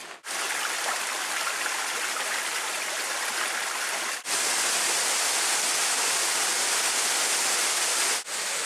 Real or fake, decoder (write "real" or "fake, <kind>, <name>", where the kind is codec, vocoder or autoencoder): real